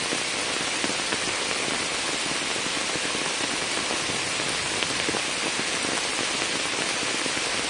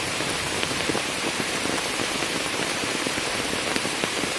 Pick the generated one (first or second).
second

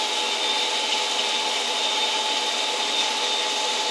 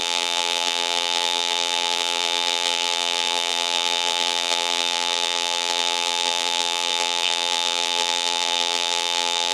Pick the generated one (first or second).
second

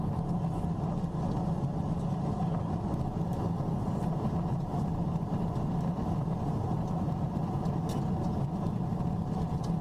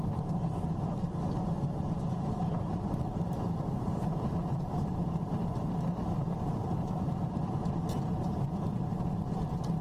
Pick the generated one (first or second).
second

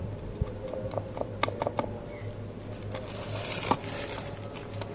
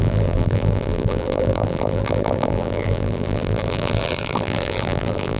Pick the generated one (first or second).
second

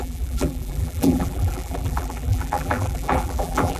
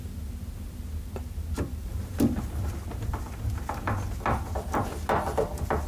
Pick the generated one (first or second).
first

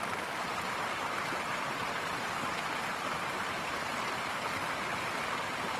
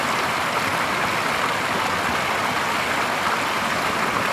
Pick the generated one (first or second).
first